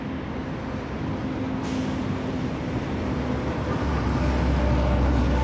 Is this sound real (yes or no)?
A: yes